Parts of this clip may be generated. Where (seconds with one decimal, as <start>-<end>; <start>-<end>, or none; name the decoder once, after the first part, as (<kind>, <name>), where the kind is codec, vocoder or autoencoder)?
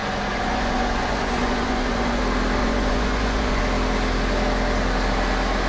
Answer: 0.0-2.2 (vocoder, Vocos); 2.6-3.6